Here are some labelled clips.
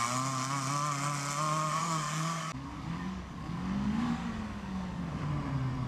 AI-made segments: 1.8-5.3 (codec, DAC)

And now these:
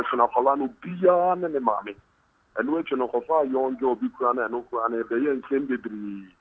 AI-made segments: none